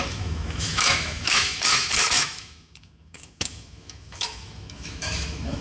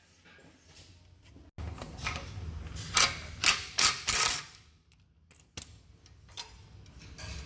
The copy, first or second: first